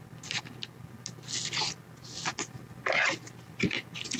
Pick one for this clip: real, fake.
real